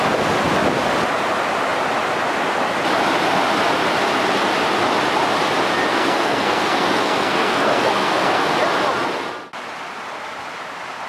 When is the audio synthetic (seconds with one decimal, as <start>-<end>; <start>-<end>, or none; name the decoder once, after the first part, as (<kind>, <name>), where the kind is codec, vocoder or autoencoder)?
5.9-8.5 (codec, SNAC)

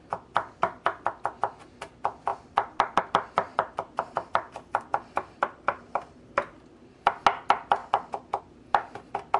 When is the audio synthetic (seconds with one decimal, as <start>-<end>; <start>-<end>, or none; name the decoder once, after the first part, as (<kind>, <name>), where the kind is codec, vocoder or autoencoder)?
3.5-7.1 (vocoder, BigVGAN v2); 7.8-8.4

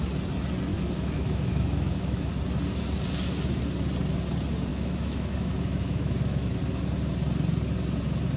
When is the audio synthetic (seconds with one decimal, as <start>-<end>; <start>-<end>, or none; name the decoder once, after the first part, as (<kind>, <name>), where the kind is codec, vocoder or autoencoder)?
0.7-2.3 (autoencoder, DAC-VAE); 4.7-6.6

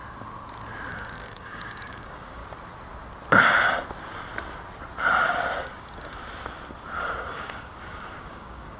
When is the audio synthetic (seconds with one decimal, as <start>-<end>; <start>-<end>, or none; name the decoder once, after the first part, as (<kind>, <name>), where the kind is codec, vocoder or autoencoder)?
0.9-2.4 (codec, DAC); 5.6-6.2; 7.2-8.8

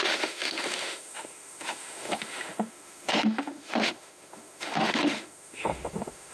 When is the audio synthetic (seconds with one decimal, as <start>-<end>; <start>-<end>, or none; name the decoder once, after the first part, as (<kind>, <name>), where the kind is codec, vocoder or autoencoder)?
0.0-6.3 (autoencoder, DAC-VAE)